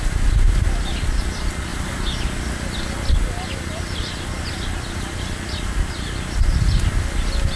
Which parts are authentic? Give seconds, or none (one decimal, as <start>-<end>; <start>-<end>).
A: 0.0-7.6